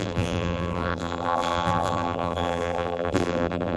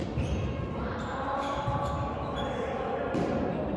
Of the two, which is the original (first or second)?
second